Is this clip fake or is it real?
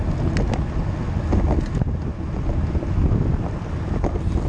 real